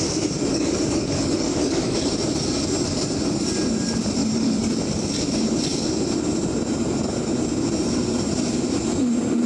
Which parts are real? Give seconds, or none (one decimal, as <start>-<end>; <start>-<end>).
0.0-0.5; 2.1-4.2; 4.8-9.5